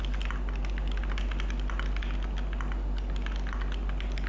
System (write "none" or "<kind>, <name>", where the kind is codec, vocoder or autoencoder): none